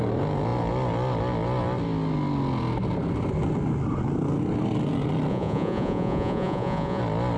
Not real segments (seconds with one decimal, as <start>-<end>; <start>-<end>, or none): 5.3-7.0